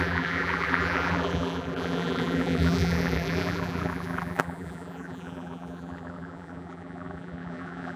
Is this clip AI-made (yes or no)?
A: yes